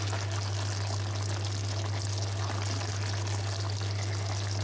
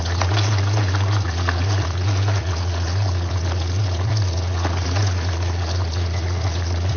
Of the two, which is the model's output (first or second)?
second